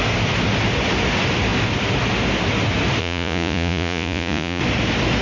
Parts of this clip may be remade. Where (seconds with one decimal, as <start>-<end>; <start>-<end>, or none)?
3.0-4.6